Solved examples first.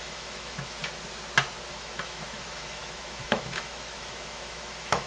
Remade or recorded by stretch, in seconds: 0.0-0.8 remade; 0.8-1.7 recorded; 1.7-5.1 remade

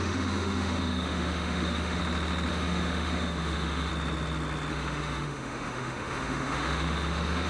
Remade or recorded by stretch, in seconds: 0.0-2.0 remade; 2.0-2.5 recorded; 2.5-3.9 remade; 3.9-4.7 recorded; 4.7-7.5 remade

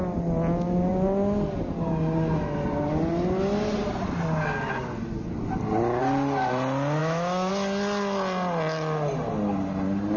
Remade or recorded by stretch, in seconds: 0.0-7.0 recorded; 7.0-7.5 remade; 7.5-10.2 recorded

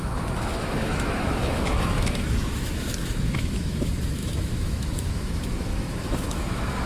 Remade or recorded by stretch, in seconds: 0.0-6.9 remade

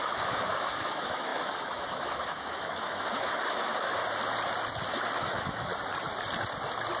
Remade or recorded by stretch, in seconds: 0.0-4.0 remade; 4.0-5.2 recorded; 5.2-5.7 remade; 5.7-7.0 recorded